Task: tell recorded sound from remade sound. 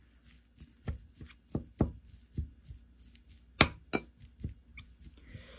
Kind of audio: recorded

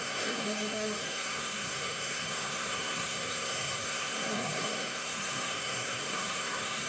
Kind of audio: remade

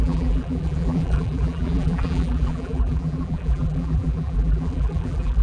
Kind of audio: remade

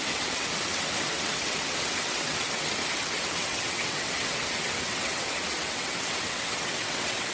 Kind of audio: remade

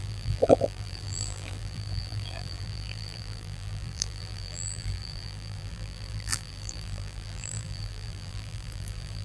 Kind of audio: remade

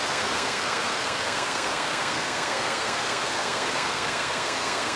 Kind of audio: remade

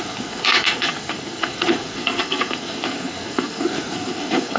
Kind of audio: remade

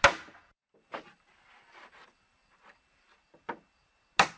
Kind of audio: recorded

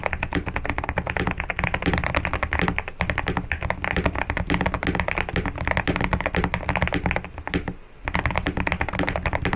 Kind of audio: recorded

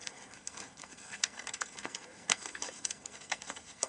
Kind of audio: remade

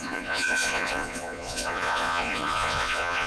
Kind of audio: remade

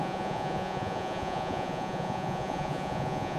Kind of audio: remade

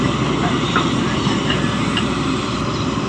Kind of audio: remade